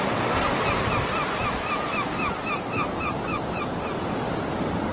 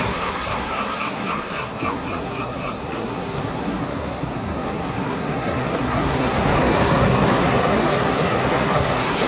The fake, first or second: second